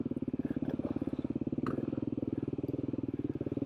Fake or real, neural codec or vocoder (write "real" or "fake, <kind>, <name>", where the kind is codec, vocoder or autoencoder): real